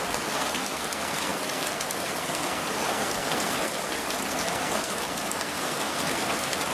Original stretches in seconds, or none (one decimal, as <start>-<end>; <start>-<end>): none